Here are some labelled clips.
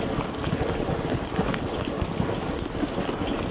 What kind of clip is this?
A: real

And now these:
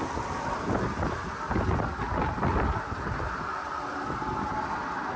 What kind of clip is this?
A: real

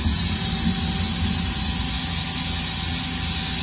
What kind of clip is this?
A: real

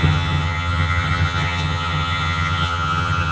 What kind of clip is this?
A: fake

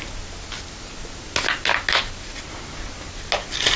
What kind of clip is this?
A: real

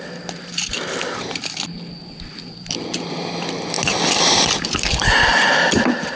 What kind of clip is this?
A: real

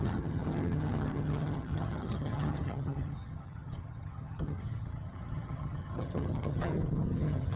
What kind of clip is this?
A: fake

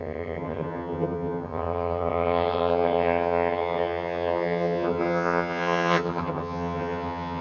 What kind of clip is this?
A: fake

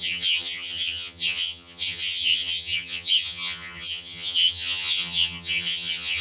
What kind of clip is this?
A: fake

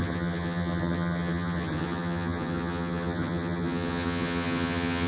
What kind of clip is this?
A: fake